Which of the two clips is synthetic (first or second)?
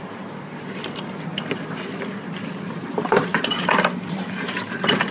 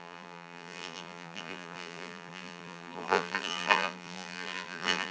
second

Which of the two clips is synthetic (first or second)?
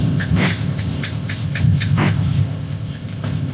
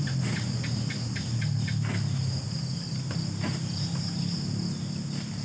first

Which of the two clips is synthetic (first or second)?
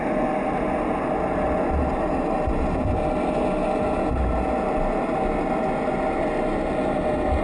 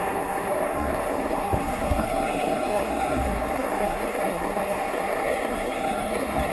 second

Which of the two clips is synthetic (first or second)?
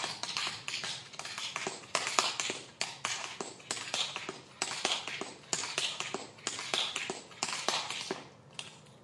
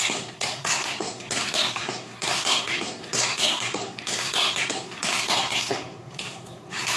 second